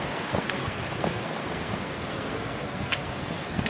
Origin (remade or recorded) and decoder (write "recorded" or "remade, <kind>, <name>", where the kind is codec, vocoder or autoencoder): remade, codec, SNAC